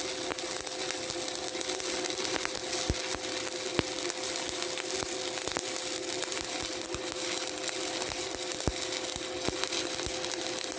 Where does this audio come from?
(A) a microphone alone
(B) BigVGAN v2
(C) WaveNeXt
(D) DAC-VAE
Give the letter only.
A